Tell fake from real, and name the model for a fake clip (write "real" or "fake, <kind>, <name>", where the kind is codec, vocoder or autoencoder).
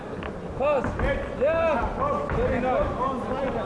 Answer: real